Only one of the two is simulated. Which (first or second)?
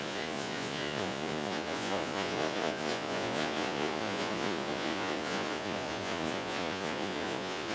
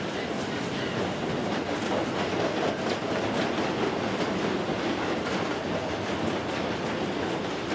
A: first